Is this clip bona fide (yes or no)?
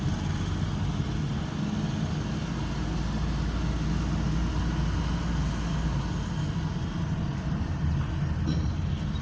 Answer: yes